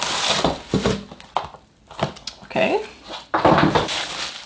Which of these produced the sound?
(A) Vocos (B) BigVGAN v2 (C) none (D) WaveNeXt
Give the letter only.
C